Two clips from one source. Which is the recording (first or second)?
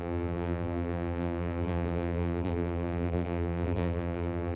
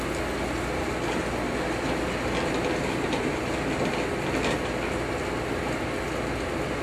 second